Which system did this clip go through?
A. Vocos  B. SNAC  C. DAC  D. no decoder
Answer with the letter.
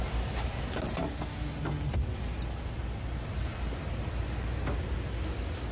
D